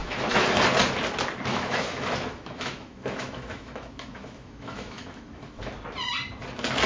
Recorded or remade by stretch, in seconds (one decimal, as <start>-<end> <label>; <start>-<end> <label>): 0.0-0.6 remade; 0.6-1.5 recorded; 1.5-5.6 remade; 5.6-6.9 recorded